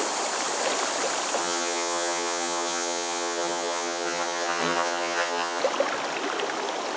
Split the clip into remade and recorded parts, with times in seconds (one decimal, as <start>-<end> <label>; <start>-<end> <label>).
0.0-1.4 recorded; 1.4-5.6 remade; 5.6-7.0 recorded